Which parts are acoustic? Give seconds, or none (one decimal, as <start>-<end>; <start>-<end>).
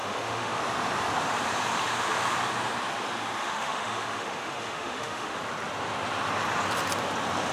0.6-3.4; 5.4-7.5